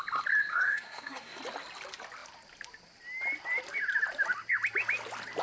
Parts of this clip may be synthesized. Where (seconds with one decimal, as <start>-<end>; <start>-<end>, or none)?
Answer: 0.5-1.4